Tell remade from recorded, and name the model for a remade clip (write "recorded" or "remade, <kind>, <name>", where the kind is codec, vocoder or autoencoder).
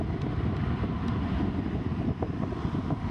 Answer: recorded